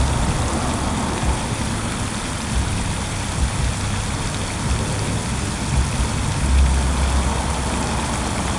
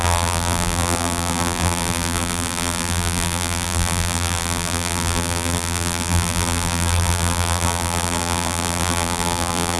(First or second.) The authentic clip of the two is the first